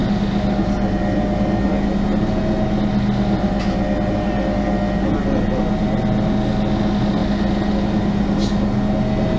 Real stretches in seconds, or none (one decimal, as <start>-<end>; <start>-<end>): 0.0-9.4